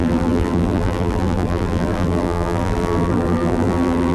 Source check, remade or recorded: remade